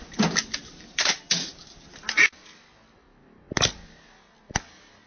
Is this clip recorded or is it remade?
recorded